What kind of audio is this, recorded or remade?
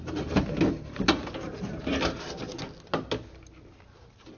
recorded